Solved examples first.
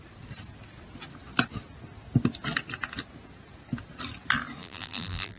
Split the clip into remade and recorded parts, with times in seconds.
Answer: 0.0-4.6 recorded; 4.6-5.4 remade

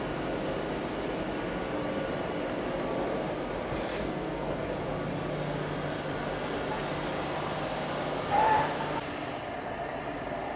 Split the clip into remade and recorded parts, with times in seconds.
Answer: 0.0-3.9 recorded; 3.9-4.7 remade; 4.7-10.6 recorded

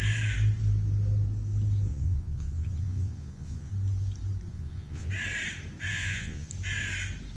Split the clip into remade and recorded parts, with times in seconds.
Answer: 0.0-1.9 recorded; 1.9-3.7 remade; 3.7-4.5 recorded; 4.5-5.1 remade; 5.1-5.9 recorded; 5.9-6.5 remade; 6.5-7.4 recorded

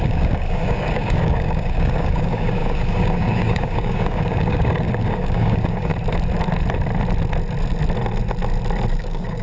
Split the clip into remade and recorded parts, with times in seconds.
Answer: 0.0-5.9 remade; 5.9-9.0 recorded; 9.0-9.4 remade

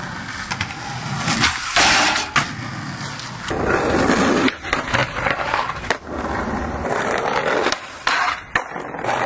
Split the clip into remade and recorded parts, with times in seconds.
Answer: 0.0-5.0 recorded; 5.0-6.4 remade; 6.4-9.3 recorded

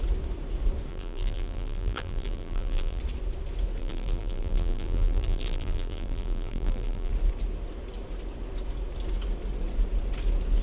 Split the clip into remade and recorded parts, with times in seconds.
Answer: 0.0-0.9 recorded; 0.9-3.0 remade; 3.0-3.8 recorded; 3.8-7.1 remade; 7.1-10.6 recorded